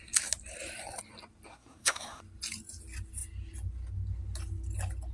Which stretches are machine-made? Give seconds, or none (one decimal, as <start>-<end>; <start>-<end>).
1.5-2.2